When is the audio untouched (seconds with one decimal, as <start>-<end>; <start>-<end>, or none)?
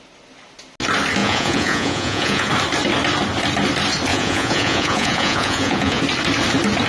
0.0-1.2; 2.5-4.1; 6.0-6.9